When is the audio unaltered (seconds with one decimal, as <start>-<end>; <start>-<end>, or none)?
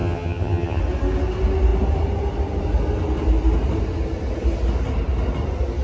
0.8-5.8